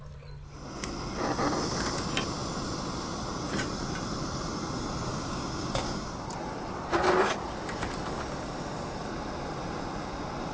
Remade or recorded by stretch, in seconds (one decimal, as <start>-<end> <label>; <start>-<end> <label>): 0.0-5.1 recorded; 5.1-6.1 remade; 6.1-10.5 recorded